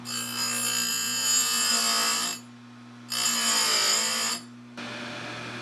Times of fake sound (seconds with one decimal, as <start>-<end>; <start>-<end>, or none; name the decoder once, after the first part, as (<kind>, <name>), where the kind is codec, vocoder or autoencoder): 0.9-1.7 (vocoder, Vocos)